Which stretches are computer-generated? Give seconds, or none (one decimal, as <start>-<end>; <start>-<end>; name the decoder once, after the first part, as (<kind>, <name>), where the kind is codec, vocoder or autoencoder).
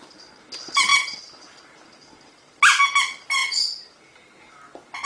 none